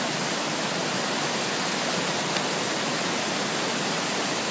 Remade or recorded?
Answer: recorded